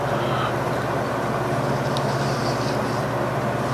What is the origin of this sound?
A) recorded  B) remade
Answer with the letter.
A